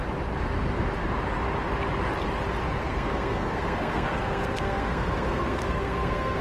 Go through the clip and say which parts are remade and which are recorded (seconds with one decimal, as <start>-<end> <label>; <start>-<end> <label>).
0.0-2.8 recorded; 2.8-6.4 remade